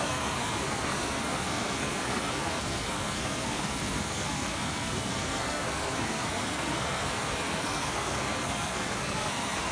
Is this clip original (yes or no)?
no